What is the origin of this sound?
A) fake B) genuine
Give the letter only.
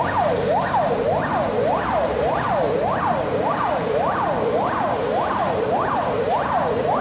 B